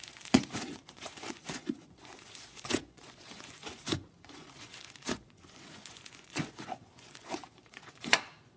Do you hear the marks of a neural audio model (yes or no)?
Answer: yes